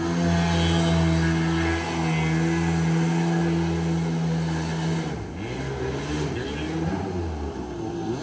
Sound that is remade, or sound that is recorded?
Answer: recorded